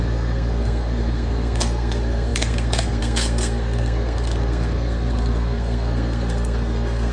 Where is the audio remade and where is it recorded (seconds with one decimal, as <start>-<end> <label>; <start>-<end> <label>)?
0.0-7.1 remade